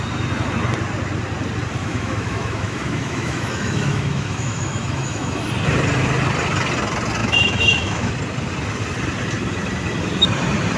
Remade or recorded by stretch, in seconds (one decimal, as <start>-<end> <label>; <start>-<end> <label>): 0.0-1.8 recorded; 1.8-5.5 remade; 5.5-7.2 recorded; 7.2-8.1 remade; 8.1-10.8 recorded